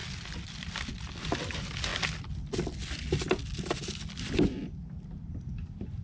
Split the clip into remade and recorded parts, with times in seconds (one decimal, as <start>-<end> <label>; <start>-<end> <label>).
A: 0.0-6.0 recorded